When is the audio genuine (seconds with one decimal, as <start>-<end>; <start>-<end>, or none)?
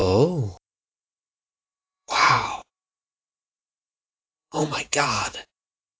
0.0-0.7